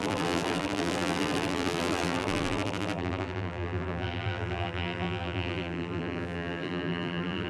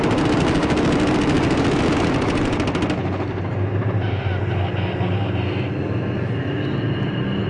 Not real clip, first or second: first